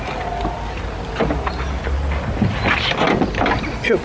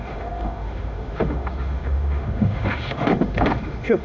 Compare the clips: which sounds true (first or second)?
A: first